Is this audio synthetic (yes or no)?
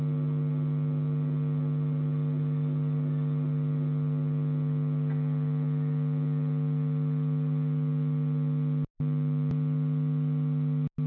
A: no